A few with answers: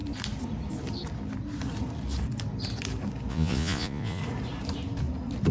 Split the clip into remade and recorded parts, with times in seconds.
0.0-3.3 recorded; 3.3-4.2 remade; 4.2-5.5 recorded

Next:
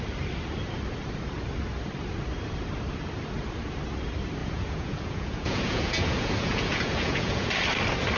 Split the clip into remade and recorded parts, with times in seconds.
0.0-4.4 recorded; 4.4-7.5 remade; 7.5-8.2 recorded

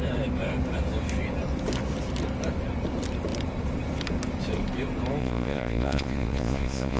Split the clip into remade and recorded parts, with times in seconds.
0.0-5.2 recorded; 5.2-7.0 remade

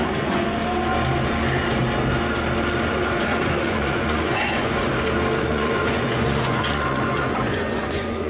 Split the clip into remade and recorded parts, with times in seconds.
0.0-0.6 remade; 0.6-2.9 recorded; 2.9-4.9 remade; 4.9-5.4 recorded; 5.4-8.3 remade

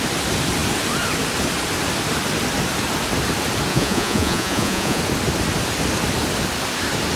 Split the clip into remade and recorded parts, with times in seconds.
0.0-3.7 recorded; 3.7-5.0 remade; 5.0-7.2 recorded

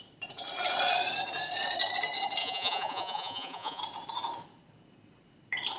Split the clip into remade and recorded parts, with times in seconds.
0.0-2.4 recorded; 2.4-3.8 remade; 3.8-5.8 recorded

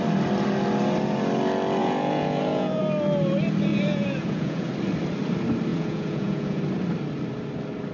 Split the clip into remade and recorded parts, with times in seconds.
0.0-1.8 recorded; 1.8-2.8 remade; 2.8-3.7 recorded; 3.7-4.7 remade; 4.7-5.7 recorded; 5.7-6.6 remade; 6.6-7.9 recorded

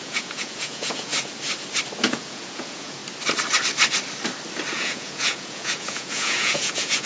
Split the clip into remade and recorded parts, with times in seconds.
0.0-1.1 remade; 1.1-2.1 recorded; 2.1-3.0 remade; 3.0-4.7 recorded; 4.7-7.1 remade